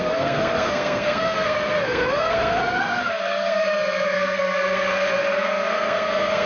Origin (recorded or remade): remade